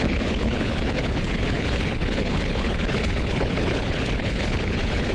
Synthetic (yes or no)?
yes